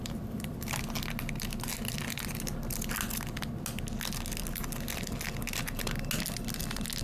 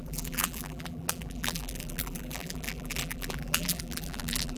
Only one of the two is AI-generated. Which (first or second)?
second